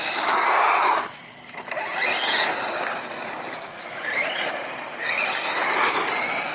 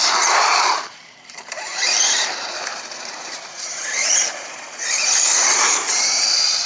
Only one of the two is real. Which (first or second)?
first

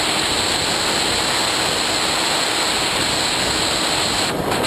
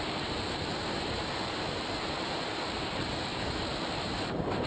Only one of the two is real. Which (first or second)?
first